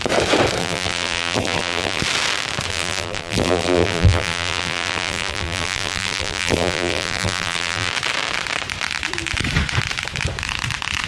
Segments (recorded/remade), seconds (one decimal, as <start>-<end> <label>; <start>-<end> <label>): 0.0-0.6 recorded; 0.6-2.0 remade; 2.0-2.7 recorded; 2.7-7.9 remade; 7.9-11.1 recorded